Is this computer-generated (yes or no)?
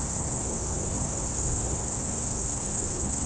yes